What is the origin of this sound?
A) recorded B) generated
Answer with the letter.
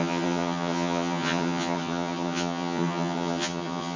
B